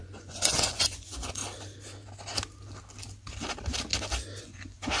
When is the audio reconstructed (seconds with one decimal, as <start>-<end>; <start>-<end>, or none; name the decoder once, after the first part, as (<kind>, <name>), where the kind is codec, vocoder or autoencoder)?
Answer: 0.0-1.4 (vocoder, Vocos); 4.4-5.0

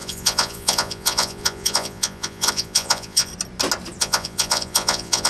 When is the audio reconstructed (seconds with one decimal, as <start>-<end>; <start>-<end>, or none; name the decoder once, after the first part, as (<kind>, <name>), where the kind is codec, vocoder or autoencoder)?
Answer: 0.0-3.3 (vocoder, Vocos); 4.0-5.3

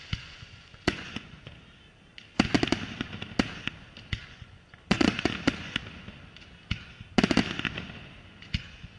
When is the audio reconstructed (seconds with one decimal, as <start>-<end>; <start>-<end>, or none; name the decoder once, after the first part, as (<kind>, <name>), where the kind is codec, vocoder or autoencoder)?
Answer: 0.0-1.5 (vocoder, Vocos); 4.2-5.8; 8.2-9.0

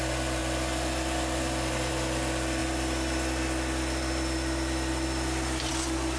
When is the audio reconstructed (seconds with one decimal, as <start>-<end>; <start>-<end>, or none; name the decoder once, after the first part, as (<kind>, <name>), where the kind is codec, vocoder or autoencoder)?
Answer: none

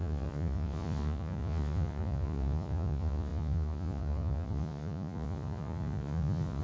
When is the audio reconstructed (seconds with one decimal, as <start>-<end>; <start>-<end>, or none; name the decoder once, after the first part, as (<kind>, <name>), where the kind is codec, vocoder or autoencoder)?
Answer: 0.0-6.6 (vocoder, Vocos)